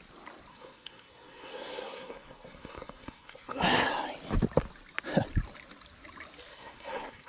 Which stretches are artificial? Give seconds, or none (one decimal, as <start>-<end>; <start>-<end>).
0.5-3.9; 6.5-7.3